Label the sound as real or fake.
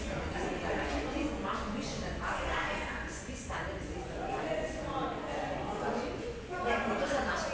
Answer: fake